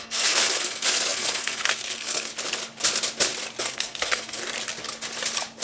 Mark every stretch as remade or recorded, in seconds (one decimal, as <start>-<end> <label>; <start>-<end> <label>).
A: 0.0-2.3 remade; 2.3-3.6 recorded; 3.6-4.4 remade; 4.4-5.6 recorded